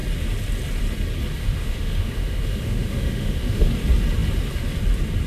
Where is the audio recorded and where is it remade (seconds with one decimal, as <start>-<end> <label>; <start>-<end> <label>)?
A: 0.0-1.4 recorded; 1.4-3.7 remade; 3.7-5.3 recorded